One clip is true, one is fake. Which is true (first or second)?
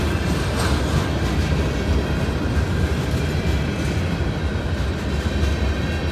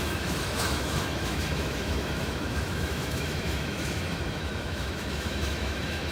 first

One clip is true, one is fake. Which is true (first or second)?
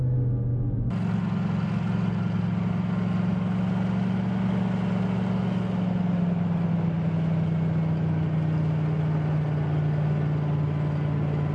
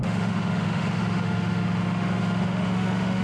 first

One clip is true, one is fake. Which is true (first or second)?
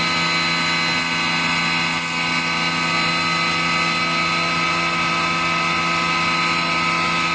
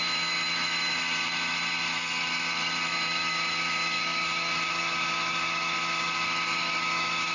first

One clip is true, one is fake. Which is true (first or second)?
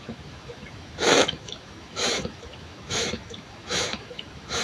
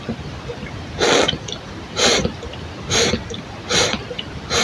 second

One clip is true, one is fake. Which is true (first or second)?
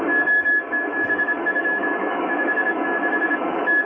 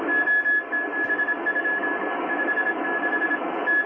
second